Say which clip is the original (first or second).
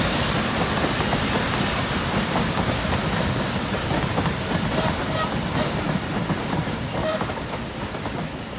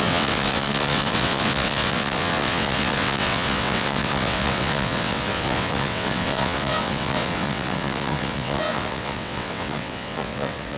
first